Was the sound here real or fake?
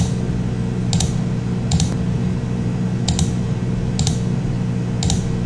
real